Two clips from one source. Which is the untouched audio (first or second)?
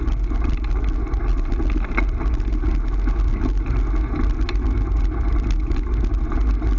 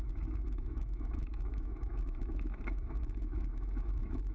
first